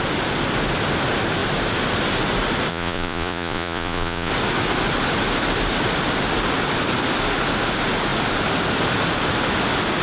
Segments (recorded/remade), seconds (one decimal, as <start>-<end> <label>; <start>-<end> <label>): 0.0-2.7 recorded; 2.7-4.3 remade; 4.3-10.0 recorded